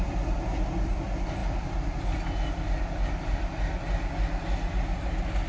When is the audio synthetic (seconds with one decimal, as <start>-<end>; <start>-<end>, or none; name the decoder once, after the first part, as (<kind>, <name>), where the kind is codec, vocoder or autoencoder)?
none